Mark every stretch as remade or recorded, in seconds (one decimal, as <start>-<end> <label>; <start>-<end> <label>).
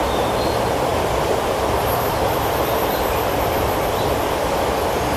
0.0-0.9 recorded; 0.9-4.0 remade; 4.0-5.2 recorded